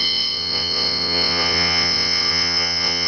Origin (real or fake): fake